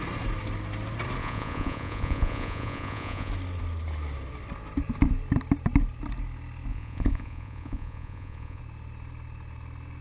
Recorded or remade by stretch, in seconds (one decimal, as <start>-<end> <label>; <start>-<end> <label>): 0.0-1.2 recorded; 1.2-3.3 remade; 3.3-6.7 recorded; 6.7-8.6 remade; 8.6-10.0 recorded